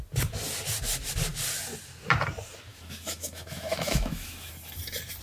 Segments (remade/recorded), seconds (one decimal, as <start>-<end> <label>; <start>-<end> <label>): 0.0-2.7 recorded; 2.7-4.5 remade; 4.5-5.2 recorded